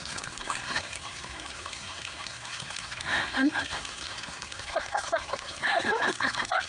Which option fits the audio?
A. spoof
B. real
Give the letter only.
A